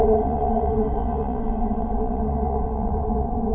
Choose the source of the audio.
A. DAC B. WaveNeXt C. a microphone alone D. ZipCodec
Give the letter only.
B